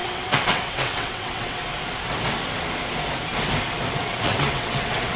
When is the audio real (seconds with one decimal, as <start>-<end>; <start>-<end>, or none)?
1.6-3.9

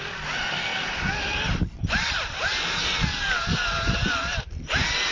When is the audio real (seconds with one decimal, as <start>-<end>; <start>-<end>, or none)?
0.0-5.1

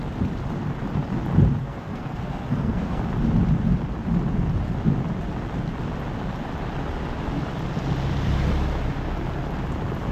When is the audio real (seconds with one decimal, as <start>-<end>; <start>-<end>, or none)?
0.0-1.6; 3.0-10.1

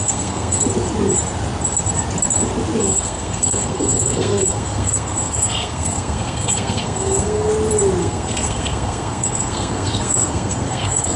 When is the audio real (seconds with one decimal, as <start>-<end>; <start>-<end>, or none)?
0.6-2.8; 7.5-8.0

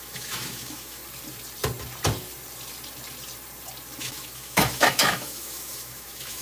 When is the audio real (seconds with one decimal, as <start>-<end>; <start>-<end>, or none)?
1.0-4.0

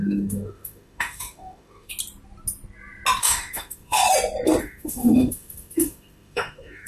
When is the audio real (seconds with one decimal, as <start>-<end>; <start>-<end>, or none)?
1.9-3.2; 4.0-4.6

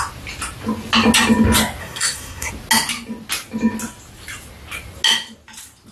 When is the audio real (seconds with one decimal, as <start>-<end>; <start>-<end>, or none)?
0.0-1.8; 2.5-5.9

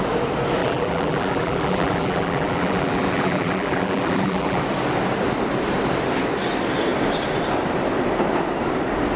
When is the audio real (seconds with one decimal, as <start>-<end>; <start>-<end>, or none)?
0.0-0.6; 4.6-9.2